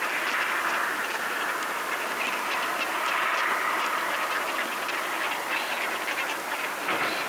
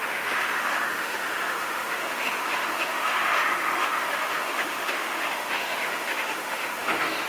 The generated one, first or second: second